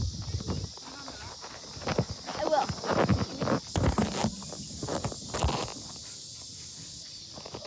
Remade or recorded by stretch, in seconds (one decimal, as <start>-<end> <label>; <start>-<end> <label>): 0.0-7.7 recorded